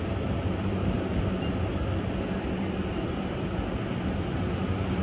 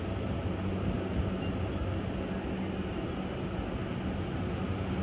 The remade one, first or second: first